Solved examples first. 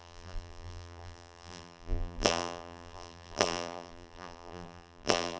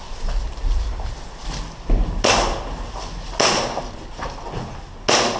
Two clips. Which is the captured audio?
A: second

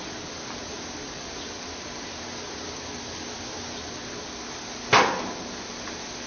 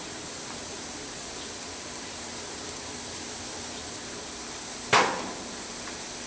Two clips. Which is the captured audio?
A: first